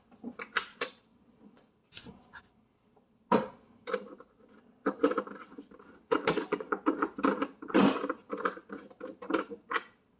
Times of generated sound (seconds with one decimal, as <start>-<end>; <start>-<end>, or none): 0.7-1.7; 6.1-6.7